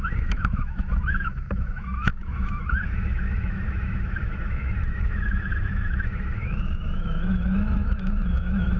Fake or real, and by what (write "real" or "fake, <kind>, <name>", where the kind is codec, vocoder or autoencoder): fake, autoencoder, DAC-VAE